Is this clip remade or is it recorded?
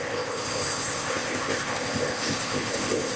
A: remade